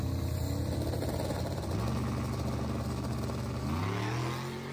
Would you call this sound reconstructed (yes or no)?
no